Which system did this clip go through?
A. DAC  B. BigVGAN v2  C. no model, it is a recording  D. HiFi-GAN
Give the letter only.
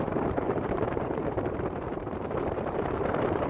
B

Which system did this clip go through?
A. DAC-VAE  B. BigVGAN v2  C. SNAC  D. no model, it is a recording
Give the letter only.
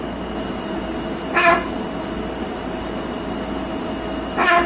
D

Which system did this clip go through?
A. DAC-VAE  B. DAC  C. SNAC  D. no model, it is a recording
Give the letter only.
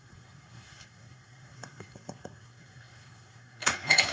C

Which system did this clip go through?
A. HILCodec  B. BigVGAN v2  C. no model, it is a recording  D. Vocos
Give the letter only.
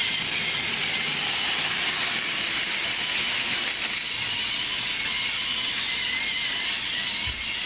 C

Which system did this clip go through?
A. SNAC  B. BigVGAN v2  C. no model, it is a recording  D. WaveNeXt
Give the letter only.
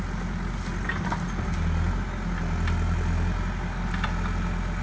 C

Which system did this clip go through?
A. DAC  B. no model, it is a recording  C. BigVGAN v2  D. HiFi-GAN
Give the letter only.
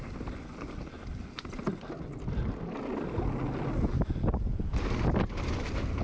B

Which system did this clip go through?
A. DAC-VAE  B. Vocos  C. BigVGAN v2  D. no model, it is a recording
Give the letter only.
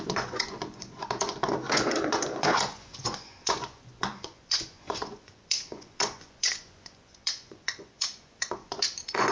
B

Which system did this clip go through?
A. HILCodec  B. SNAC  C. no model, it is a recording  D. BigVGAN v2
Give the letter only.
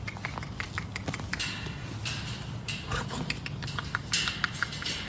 C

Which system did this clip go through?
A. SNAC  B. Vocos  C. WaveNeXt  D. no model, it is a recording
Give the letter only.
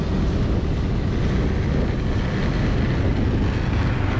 D